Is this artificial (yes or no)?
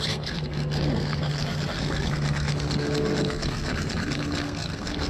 yes